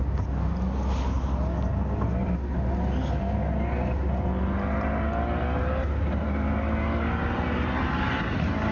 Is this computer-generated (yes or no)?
no